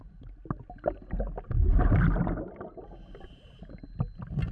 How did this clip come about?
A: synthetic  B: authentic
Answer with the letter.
B